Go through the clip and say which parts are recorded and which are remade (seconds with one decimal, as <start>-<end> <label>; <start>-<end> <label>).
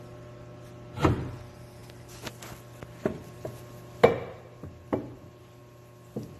0.0-6.4 recorded